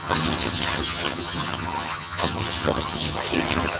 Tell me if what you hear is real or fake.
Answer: fake